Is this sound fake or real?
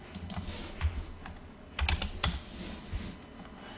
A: real